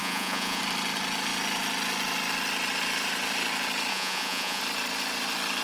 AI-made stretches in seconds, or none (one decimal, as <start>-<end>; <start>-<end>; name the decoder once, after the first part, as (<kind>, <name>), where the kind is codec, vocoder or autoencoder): 0.0-0.6 (vocoder, Vocos); 3.9-4.6